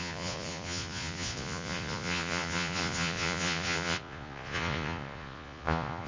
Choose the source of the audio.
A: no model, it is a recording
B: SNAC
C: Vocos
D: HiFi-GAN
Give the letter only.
C